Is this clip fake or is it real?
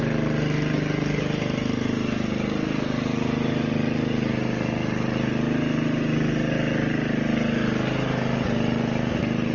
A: real